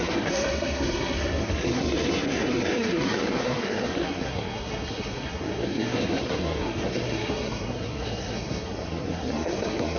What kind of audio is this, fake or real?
fake